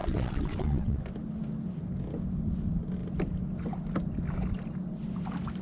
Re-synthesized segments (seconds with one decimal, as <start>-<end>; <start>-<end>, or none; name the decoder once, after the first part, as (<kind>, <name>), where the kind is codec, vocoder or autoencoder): 0.0-1.0 (vocoder, WaveNeXt)